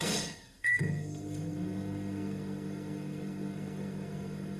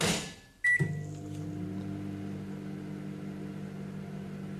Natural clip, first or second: second